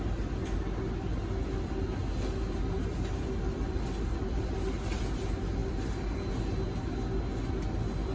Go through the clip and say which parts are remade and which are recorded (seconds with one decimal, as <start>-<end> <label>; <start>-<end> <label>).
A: 0.0-2.9 recorded; 2.9-4.4 remade; 4.4-5.6 recorded; 5.6-6.2 remade; 6.2-8.1 recorded